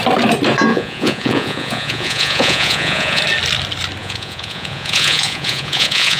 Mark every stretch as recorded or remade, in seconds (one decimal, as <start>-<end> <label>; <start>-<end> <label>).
0.0-0.7 recorded; 0.7-3.2 remade; 3.2-4.0 recorded; 4.0-6.2 remade